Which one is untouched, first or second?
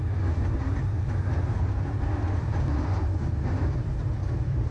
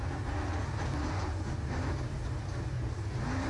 second